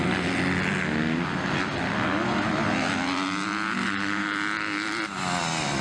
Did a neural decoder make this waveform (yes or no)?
no